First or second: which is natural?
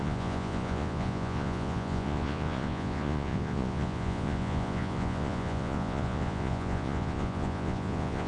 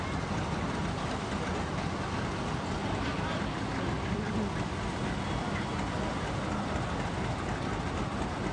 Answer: second